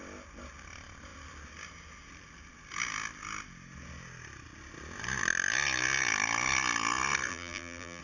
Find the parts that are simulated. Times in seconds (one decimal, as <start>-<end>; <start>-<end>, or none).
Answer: 7.3-8.0